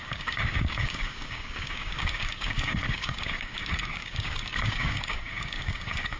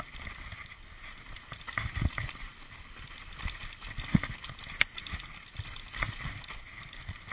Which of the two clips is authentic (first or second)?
second